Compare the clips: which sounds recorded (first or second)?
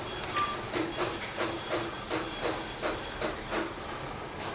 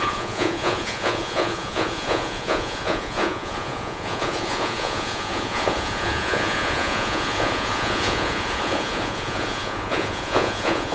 first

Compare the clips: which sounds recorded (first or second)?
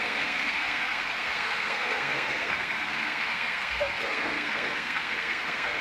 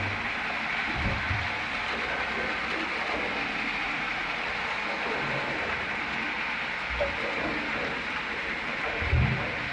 second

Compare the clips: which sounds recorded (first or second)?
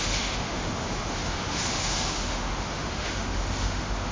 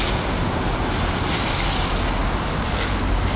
second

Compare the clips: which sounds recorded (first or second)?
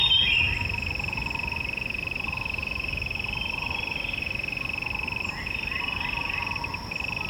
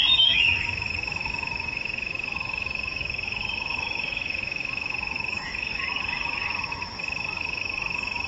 first